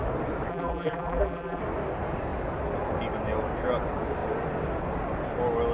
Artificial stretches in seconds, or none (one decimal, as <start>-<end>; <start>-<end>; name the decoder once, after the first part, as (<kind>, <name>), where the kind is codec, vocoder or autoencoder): 0.5-1.6 (vocoder, BigVGAN v2)